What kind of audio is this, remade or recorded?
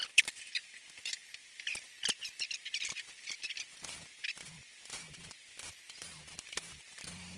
recorded